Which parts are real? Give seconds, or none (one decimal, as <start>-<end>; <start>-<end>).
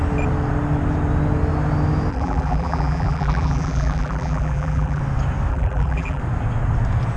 0.0-2.1; 5.0-5.5; 6.2-7.2